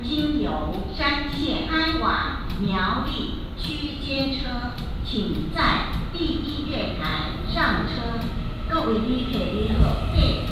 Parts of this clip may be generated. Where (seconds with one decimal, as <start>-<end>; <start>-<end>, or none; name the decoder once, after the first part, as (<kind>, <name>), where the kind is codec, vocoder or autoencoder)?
2.2-6.5 (vocoder, BigVGAN v2)